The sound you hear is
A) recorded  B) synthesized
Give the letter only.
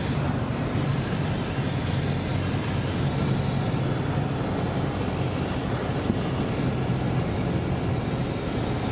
A